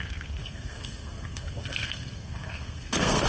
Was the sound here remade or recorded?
remade